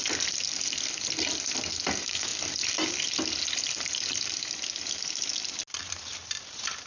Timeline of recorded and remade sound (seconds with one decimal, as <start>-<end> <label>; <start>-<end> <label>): 0.0-6.9 recorded